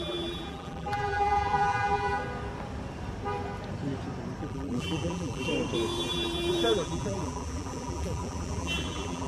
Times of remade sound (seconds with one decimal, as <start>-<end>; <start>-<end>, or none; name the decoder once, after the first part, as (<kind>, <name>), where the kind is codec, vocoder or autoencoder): 0.0-2.2 (vocoder, BigVGAN v2); 4.4-5.5; 6.0-9.3